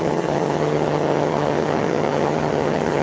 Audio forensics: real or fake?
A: fake